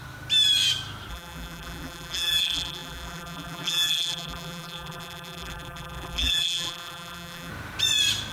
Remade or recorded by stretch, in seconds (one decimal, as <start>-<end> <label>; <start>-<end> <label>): 0.0-1.1 recorded; 1.1-7.5 remade; 7.5-8.3 recorded